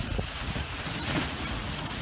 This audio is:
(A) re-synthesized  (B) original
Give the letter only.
A